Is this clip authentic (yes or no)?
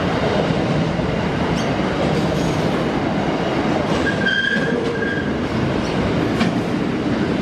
no